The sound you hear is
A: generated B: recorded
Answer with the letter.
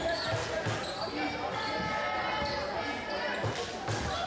B